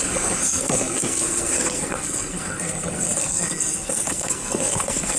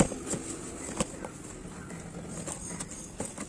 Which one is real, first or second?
second